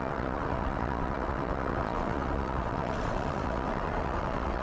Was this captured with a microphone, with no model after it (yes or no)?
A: no